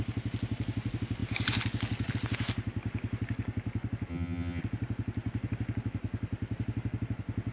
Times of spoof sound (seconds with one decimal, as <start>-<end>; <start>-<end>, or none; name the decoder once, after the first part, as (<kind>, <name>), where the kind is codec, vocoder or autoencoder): 4.1-4.6 (vocoder, HiFi-GAN)